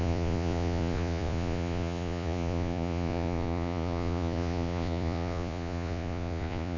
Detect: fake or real fake